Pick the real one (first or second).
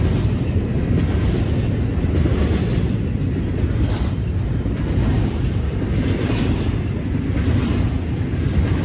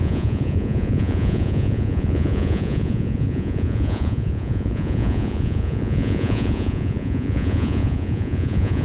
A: first